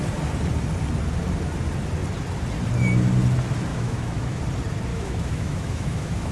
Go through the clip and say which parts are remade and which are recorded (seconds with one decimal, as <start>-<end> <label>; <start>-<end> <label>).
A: 0.0-3.7 recorded; 3.7-4.4 remade; 4.4-4.9 recorded; 4.9-6.3 remade